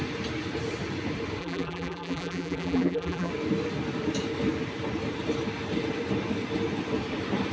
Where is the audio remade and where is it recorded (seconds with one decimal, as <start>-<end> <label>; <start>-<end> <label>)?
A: 0.0-1.4 recorded; 1.4-3.3 remade; 3.3-7.5 recorded